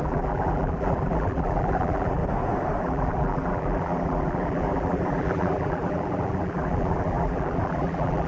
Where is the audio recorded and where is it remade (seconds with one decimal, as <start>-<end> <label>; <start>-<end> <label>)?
0.0-2.2 remade; 2.2-2.8 recorded; 2.8-8.3 remade